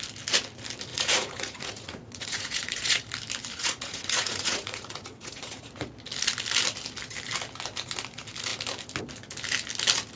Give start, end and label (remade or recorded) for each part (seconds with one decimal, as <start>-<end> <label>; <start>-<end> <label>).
0.0-0.9 recorded; 0.9-3.0 remade; 3.0-3.5 recorded; 3.5-5.9 remade; 5.9-10.2 recorded